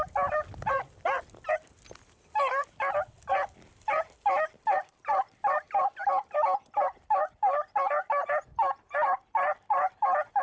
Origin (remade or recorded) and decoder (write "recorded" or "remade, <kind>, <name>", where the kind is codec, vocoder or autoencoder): recorded